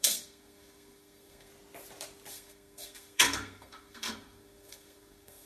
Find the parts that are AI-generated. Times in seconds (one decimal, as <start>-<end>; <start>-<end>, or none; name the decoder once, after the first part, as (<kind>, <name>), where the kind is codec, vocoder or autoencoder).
0.0-1.5 (codec, SNAC); 2.3-5.5